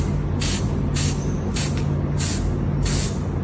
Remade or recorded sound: recorded